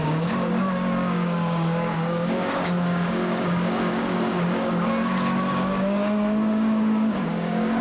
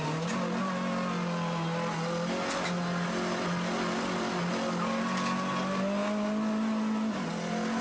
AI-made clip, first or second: first